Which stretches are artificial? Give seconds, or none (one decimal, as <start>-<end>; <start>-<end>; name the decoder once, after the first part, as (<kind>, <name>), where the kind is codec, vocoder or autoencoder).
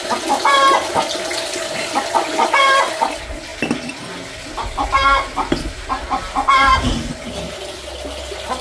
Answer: none